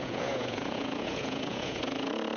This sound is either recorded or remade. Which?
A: remade